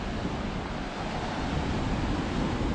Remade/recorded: recorded